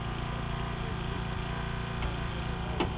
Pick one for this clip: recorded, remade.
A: recorded